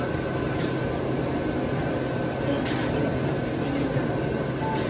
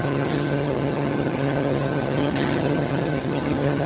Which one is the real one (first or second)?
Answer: first